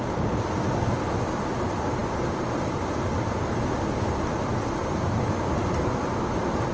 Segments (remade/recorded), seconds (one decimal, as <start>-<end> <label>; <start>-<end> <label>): 0.0-6.7 recorded

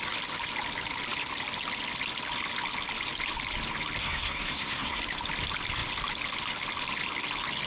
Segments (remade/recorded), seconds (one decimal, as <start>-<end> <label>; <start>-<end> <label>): 0.0-4.0 recorded; 4.0-5.0 remade; 5.0-7.7 recorded

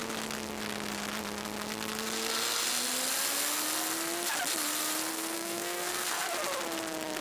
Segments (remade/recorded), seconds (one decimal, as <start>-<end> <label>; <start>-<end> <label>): 0.0-5.1 recorded; 5.1-6.3 remade; 6.3-7.2 recorded

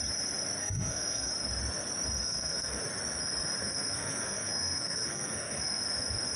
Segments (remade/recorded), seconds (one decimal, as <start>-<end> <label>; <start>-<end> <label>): 0.0-0.6 recorded; 0.6-1.3 remade; 1.3-2.2 recorded; 2.2-2.8 remade; 2.8-3.6 recorded; 3.6-5.8 remade; 5.8-6.4 recorded

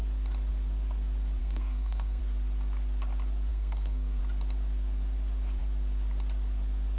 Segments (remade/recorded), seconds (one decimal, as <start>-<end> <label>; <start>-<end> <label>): 0.0-1.4 recorded; 1.4-2.2 remade; 2.2-3.5 recorded; 3.5-4.2 remade; 4.2-7.0 recorded

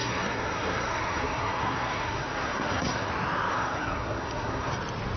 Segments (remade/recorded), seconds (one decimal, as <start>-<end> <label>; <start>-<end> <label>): 0.0-3.1 remade; 3.1-3.5 recorded; 3.5-4.7 remade; 4.7-5.2 recorded

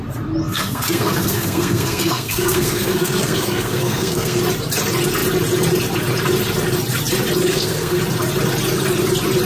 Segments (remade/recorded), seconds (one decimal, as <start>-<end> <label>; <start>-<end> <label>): 0.0-0.4 recorded; 0.4-4.4 remade; 4.4-7.5 recorded; 7.5-8.0 remade; 8.0-9.4 recorded